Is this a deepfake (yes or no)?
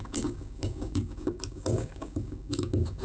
yes